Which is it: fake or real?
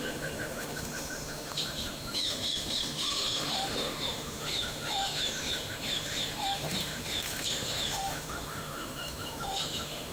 fake